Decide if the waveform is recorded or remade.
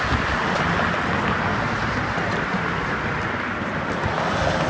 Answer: recorded